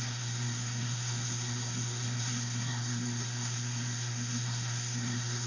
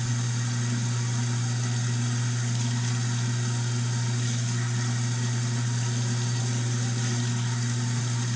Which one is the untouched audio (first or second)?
second